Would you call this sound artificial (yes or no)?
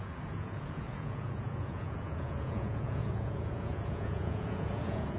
yes